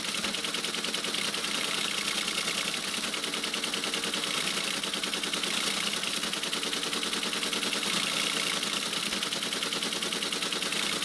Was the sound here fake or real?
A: real